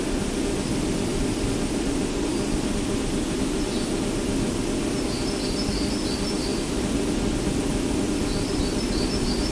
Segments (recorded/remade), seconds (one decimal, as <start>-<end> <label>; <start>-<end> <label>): 0.0-9.5 recorded